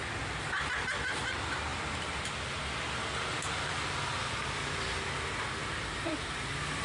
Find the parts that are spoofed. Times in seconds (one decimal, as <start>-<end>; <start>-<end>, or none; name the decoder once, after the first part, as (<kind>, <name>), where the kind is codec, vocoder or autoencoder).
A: 5.6-6.2 (vocoder, BigVGAN v2)

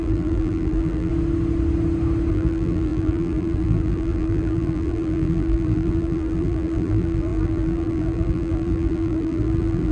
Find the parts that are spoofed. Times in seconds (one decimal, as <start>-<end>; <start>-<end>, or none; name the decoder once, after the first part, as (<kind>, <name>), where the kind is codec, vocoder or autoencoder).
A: 0.0-1.1 (vocoder, BigVGAN v2); 2.3-9.9

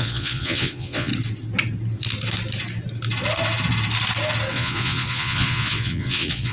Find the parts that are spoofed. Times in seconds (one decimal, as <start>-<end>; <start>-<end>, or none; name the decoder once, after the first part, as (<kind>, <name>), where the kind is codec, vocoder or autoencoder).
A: 0.0-1.1 (vocoder, Vocos); 4.5-6.5